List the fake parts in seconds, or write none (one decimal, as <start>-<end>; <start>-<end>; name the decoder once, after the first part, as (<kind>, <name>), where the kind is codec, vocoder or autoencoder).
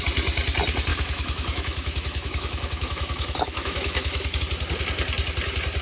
0.9-4.4 (autoencoder, DAC-VAE)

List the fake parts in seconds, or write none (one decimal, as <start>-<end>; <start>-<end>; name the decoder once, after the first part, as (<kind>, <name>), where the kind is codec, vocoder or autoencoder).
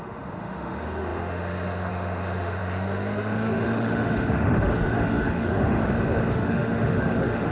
0.0-5.8 (autoencoder, DAC-VAE); 6.3-7.5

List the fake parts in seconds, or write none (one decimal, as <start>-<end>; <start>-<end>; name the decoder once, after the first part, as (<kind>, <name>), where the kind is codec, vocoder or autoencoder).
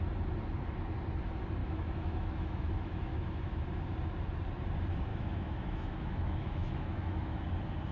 1.6-3.6 (autoencoder, DAC-VAE); 5.1-7.4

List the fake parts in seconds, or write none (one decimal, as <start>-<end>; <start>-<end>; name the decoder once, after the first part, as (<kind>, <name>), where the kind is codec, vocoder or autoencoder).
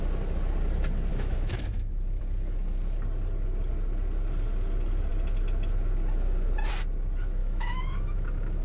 1.1-2.2 (autoencoder, DAC-VAE); 7.4-8.6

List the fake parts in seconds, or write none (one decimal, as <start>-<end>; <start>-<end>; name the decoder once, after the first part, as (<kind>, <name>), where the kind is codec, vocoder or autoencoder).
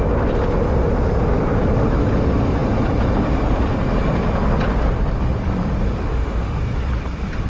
6.1-6.6 (autoencoder, DAC-VAE)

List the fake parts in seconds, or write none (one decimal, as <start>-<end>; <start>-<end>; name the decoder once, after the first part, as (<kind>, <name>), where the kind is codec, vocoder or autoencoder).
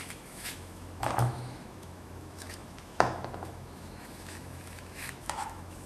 0.0-5.9 (autoencoder, DAC-VAE)